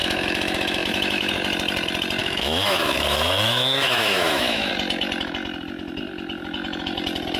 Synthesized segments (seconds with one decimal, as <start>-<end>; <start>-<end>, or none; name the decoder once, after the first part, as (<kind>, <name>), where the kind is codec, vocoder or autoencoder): 0.0-1.3 (autoencoder, DAC-VAE); 2.2-4.7